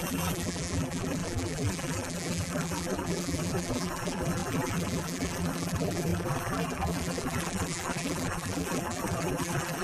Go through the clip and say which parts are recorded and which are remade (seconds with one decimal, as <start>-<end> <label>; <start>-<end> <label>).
0.0-9.8 remade